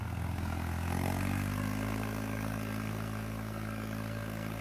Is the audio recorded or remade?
remade